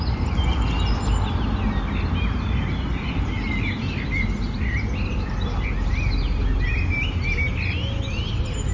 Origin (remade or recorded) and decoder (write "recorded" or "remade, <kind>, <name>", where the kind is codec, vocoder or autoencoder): recorded